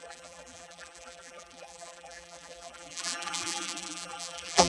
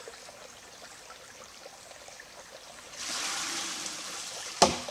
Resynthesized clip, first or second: first